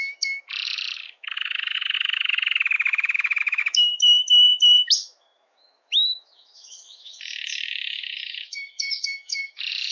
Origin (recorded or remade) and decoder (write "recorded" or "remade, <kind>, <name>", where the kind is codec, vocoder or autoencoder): remade, autoencoder, DAC-VAE